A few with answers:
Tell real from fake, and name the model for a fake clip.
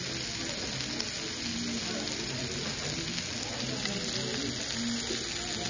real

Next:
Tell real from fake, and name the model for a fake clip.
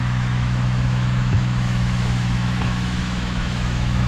fake, autoencoder, DAC-VAE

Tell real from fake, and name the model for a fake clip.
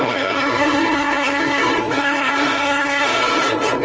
fake, codec, SNAC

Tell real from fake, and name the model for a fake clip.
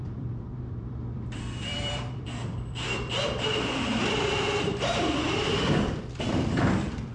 fake, vocoder, BigVGAN v2